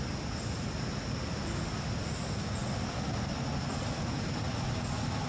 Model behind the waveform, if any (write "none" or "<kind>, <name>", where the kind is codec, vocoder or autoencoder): none